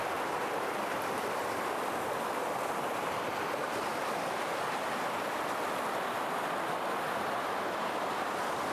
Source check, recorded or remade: recorded